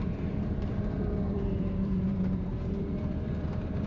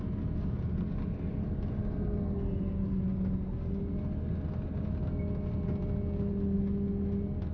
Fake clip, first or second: first